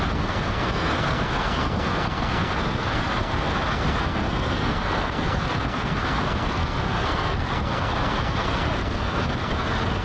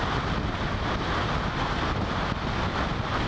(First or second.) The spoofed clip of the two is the first